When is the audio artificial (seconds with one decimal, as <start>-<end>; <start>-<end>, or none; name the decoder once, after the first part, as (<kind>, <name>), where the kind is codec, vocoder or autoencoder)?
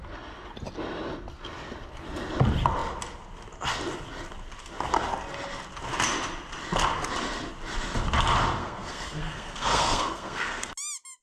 8.6-10.7 (codec, SNAC)